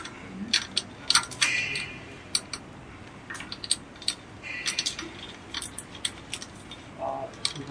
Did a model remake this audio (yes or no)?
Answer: no